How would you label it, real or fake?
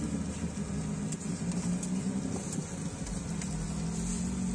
real